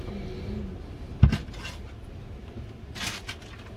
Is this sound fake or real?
real